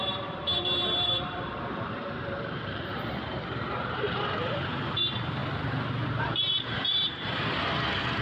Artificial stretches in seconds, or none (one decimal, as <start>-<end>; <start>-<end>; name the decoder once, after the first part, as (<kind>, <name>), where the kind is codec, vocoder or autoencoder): 0.0-5.4 (vocoder, BigVGAN v2); 6.2-7.3